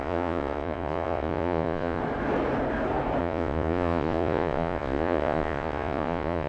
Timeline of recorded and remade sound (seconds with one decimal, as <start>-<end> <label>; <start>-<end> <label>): 0.0-2.0 remade; 2.0-3.2 recorded; 3.2-6.5 remade